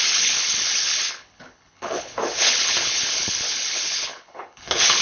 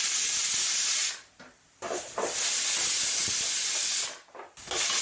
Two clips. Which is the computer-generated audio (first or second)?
first